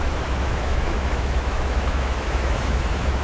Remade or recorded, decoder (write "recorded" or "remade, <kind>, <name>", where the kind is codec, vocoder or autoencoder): remade, autoencoder, DAC-VAE